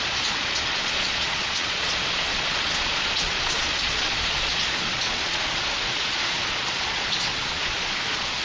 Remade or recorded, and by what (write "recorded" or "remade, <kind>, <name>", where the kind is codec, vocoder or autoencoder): remade, vocoder, Vocos